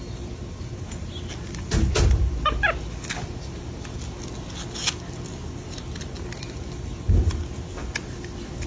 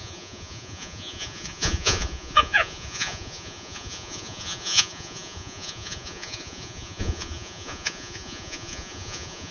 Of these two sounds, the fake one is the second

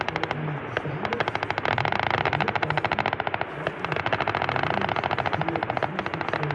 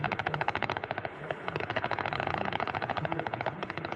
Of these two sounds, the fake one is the second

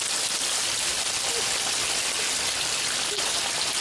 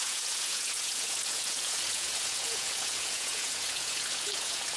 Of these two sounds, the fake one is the second